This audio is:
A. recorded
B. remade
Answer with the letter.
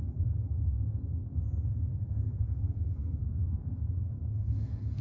B